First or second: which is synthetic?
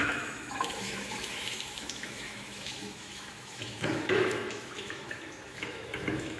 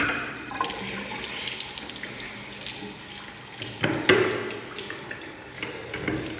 first